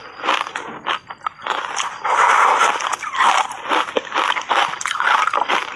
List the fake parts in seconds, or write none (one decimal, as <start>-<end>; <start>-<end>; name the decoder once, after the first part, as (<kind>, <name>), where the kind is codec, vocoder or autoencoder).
none